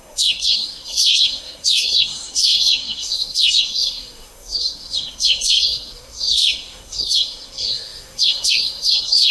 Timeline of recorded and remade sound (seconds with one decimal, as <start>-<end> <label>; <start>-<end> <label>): 0.0-9.3 remade